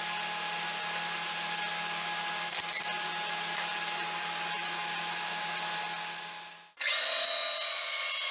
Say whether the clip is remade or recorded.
recorded